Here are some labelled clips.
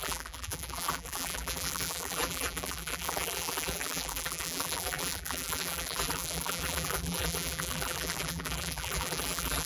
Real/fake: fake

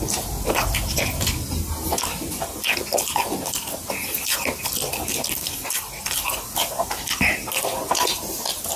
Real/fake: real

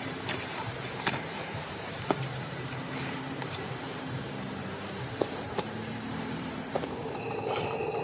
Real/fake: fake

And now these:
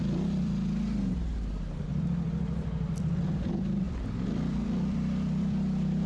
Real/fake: fake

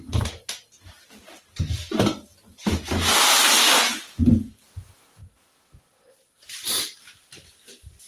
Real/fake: real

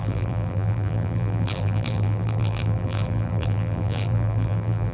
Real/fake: fake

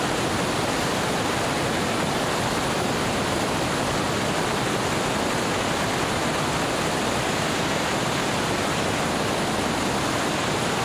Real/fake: real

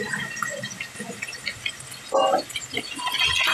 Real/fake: real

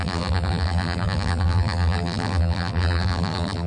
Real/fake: fake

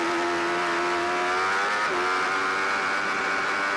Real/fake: real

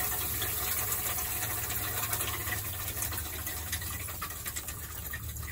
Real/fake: real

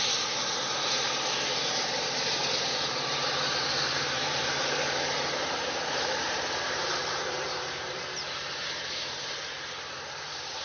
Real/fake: fake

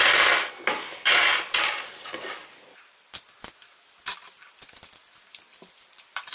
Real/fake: real